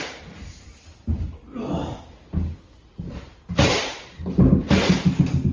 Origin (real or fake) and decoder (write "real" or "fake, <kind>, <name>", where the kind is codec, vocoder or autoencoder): real